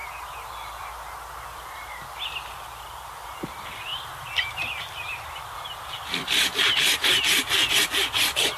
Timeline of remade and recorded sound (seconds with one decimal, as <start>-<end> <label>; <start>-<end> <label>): 0.0-8.6 recorded